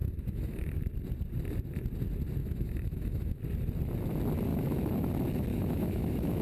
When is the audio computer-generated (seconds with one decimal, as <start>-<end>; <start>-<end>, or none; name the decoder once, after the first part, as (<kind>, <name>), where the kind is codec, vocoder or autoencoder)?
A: 0.0-0.8 (autoencoder, DAC-VAE); 2.4-3.4; 4.5-5.1; 5.5-6.4